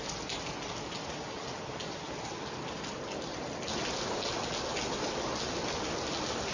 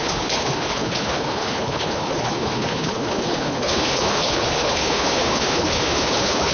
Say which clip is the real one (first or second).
first